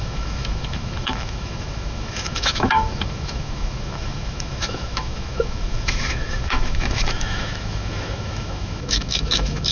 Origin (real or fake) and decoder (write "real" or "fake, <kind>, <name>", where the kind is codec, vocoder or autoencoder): fake, autoencoder, DAC-VAE